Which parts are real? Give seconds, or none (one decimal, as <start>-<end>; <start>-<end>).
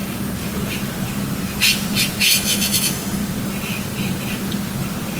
0.0-2.2; 3.2-5.2